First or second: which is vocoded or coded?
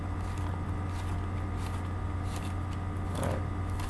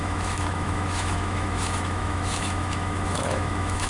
second